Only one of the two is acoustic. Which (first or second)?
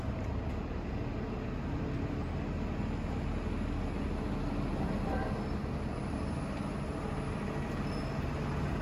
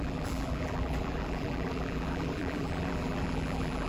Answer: first